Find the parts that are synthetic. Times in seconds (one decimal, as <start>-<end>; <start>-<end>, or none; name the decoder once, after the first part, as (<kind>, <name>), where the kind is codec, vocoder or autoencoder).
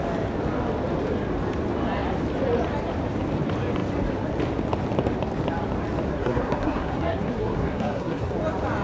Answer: 6.1-8.4 (codec, SNAC)